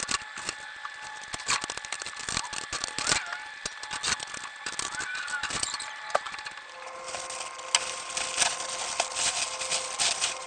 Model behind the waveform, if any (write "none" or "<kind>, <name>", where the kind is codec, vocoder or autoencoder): none